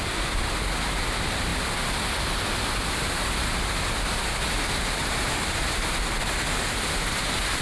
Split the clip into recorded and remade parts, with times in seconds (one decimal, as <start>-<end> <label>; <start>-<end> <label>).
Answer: 0.0-7.6 recorded